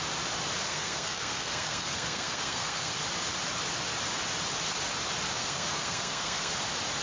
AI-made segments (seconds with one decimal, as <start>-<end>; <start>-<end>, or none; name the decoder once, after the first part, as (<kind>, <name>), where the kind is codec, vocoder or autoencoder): 0.6-2.9 (codec, SNAC); 5.4-6.5